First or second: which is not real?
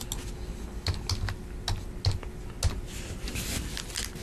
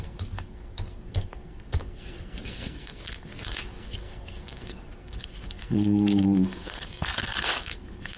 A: second